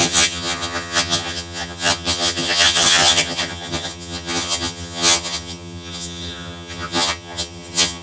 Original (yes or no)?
no